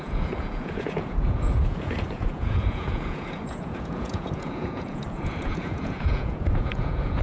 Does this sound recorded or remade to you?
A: remade